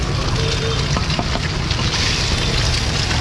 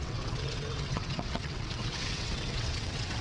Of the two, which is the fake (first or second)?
second